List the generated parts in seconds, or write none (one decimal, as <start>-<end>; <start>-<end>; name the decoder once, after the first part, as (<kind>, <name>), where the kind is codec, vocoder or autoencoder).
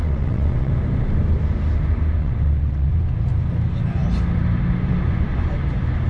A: 0.0-0.7 (vocoder, WaveNeXt); 2.2-2.9